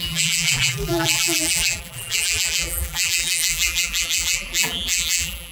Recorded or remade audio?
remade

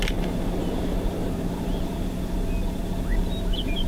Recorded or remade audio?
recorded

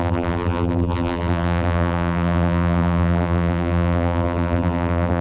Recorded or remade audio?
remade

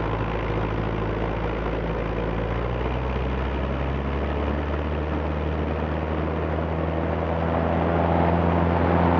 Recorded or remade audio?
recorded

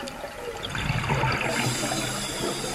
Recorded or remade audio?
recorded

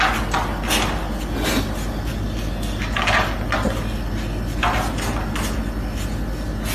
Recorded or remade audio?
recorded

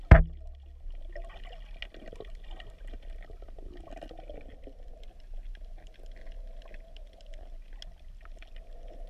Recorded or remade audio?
recorded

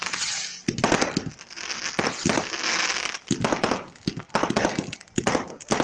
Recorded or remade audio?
recorded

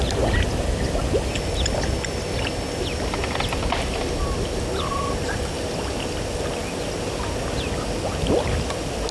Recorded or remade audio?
recorded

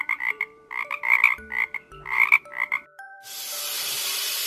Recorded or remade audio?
remade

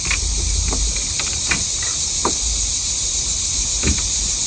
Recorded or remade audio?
remade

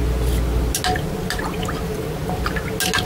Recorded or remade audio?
recorded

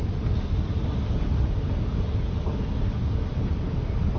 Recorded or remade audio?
recorded